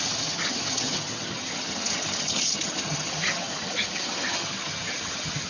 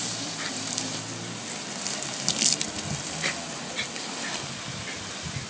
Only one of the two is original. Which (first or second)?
second